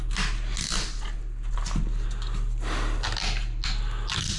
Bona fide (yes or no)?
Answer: yes